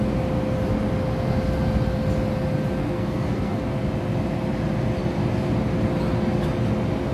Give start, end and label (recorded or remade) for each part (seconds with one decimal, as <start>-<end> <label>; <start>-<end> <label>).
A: 0.0-2.8 recorded; 2.8-3.6 remade; 3.6-7.1 recorded